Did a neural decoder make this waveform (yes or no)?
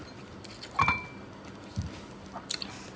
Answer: no